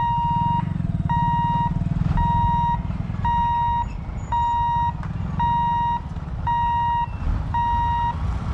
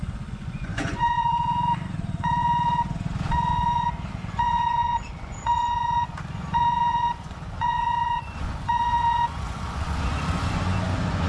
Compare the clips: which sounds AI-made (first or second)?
second